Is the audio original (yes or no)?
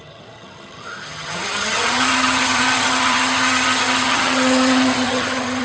no